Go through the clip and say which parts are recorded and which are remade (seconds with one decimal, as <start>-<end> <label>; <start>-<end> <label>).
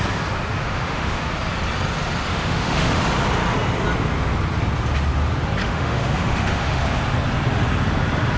0.0-0.6 recorded; 0.6-1.2 remade; 1.2-2.3 recorded; 2.3-3.0 remade; 3.0-5.6 recorded; 5.6-6.8 remade; 6.8-8.4 recorded